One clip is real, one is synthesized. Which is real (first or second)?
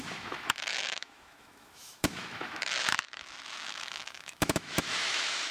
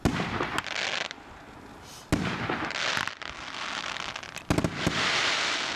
second